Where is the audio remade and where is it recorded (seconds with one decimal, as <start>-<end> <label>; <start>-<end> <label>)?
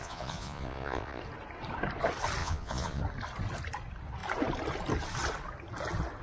0.0-1.2 remade; 1.2-2.4 recorded; 2.4-3.0 remade; 3.0-6.2 recorded